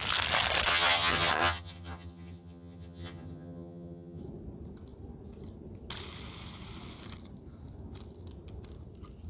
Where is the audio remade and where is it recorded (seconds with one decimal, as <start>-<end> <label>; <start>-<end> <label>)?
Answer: 0.0-0.7 recorded; 0.7-4.2 remade; 4.2-9.3 recorded